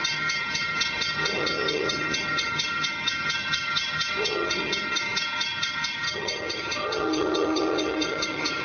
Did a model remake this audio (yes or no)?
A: yes